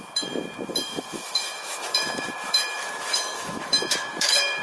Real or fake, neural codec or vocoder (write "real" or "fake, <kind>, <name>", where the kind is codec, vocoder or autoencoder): fake, autoencoder, DAC-VAE